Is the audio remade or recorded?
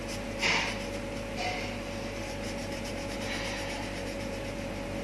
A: remade